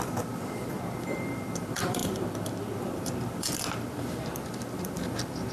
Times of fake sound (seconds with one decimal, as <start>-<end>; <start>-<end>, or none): 0.0-5.5